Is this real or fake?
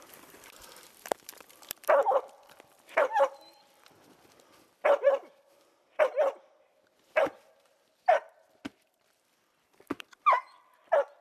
fake